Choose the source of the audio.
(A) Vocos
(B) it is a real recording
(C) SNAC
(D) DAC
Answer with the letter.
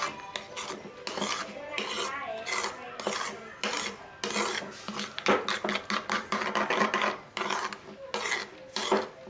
B